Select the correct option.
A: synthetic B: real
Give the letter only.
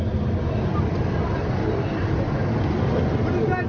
B